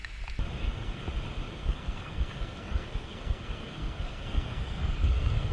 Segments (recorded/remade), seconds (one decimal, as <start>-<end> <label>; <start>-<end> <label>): 0.0-0.6 recorded; 0.6-1.0 remade; 1.0-1.5 recorded; 1.5-5.5 remade